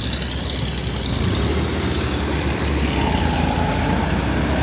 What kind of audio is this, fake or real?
real